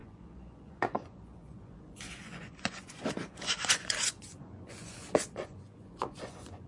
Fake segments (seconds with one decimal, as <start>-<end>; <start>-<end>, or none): 0.0-6.7